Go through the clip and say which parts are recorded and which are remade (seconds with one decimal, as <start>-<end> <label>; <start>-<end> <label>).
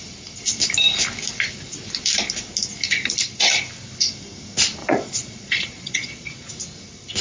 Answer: 0.0-4.8 recorded; 4.8-6.5 remade; 6.5-7.2 recorded